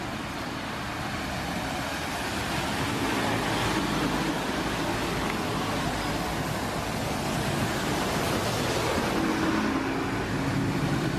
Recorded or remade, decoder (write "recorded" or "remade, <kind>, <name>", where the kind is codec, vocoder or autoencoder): recorded